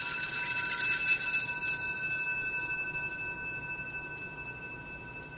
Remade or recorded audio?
recorded